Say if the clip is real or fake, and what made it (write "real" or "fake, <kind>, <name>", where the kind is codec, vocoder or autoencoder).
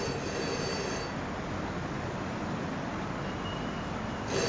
real